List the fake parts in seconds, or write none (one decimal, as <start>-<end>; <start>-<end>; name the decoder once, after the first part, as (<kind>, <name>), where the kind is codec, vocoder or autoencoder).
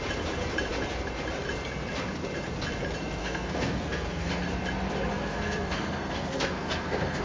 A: 3.2-4.3 (codec, SNAC); 5.1-7.2